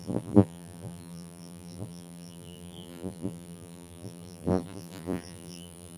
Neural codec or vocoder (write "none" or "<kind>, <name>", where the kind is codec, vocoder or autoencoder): vocoder, BigVGAN v2